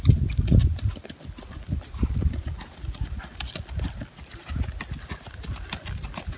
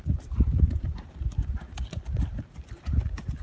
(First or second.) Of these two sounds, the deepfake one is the second